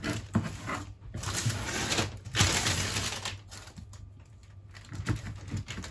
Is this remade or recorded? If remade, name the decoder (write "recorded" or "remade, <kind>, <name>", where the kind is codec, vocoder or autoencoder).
recorded